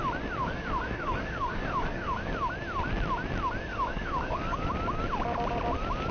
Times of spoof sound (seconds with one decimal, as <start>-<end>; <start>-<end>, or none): 0.4-2.3; 3.7-4.7